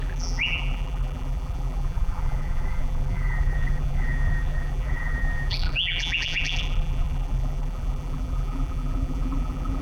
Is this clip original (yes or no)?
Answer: no